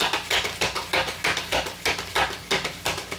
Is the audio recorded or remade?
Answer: recorded